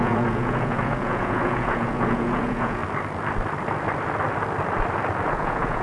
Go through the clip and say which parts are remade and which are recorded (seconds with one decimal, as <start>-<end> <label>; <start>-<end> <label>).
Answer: 0.0-2.8 remade; 2.8-5.3 recorded; 5.3-5.8 remade